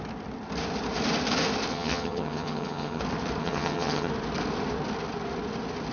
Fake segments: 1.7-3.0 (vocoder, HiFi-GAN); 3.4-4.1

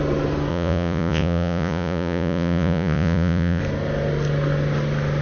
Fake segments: 0.5-3.6 (vocoder, Vocos)

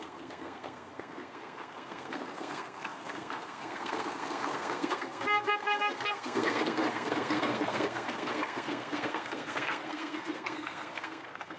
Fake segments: 0.0-11.6 (codec, SNAC)